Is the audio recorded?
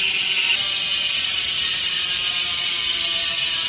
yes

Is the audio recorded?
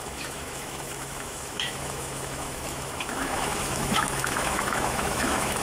no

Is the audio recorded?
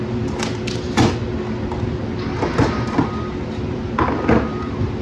yes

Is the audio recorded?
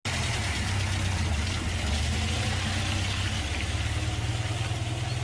yes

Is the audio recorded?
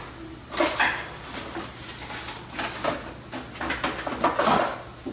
yes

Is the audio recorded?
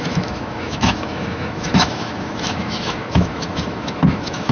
no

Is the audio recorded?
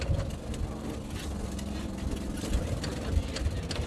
yes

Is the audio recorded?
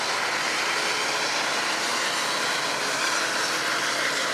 yes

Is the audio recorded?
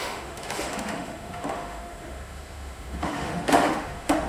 no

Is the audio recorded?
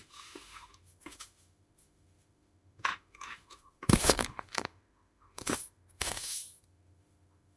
no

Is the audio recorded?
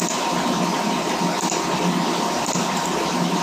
yes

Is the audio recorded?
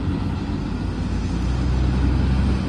yes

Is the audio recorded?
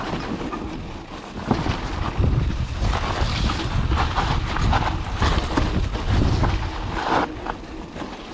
yes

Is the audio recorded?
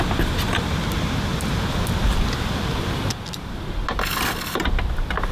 yes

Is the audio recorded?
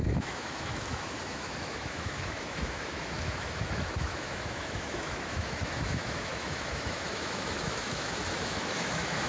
no